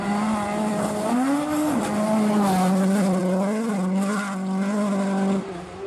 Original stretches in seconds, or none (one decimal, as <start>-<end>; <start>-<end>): 0.0-5.9